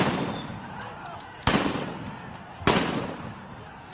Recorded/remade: recorded